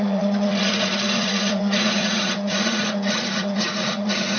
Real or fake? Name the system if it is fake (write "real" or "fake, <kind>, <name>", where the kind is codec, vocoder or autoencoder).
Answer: fake, vocoder, Vocos